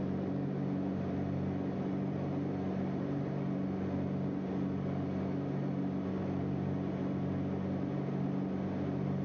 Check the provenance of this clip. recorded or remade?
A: recorded